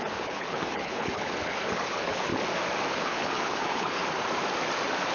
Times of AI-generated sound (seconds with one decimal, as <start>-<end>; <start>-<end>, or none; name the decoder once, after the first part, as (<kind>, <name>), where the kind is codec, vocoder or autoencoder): 0.0-2.3 (codec, HILCodec); 2.9-4.0